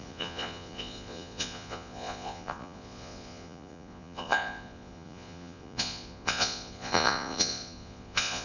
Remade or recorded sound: remade